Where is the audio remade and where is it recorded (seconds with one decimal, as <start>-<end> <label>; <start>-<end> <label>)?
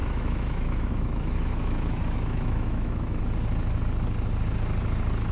0.0-3.2 remade; 3.2-5.3 recorded